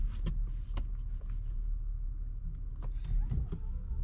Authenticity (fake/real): real